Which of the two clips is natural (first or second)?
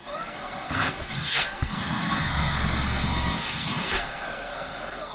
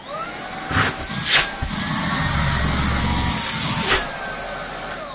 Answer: second